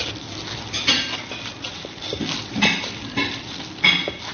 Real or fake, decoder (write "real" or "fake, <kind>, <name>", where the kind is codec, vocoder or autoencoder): real